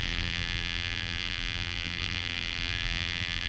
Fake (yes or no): yes